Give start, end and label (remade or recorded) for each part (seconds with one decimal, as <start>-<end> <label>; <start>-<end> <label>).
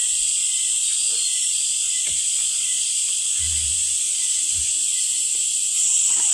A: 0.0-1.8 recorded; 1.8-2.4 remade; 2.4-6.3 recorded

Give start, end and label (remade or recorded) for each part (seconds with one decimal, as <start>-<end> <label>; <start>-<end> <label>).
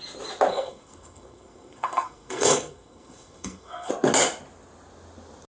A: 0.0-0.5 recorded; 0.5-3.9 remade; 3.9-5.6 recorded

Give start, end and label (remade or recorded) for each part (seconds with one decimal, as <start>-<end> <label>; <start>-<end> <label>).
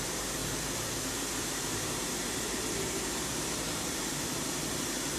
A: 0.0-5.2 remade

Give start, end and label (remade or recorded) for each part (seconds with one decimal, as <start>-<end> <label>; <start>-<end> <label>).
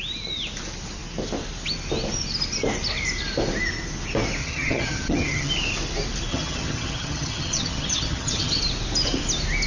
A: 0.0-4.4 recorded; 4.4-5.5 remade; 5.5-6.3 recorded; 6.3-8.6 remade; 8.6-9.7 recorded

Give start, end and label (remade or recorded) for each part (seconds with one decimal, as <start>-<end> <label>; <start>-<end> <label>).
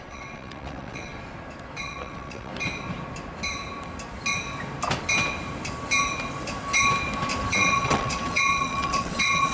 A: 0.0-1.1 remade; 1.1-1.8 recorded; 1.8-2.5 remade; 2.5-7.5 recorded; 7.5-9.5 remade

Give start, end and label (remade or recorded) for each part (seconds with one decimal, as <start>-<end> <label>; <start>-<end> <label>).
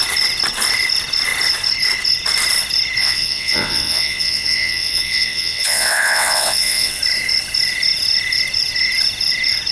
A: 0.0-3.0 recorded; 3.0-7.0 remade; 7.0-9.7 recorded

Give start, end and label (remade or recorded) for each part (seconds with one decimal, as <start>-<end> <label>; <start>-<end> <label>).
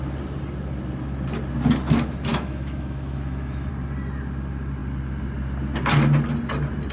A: 0.0-2.3 recorded; 2.3-3.7 remade; 3.7-6.9 recorded